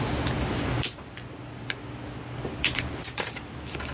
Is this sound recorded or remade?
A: recorded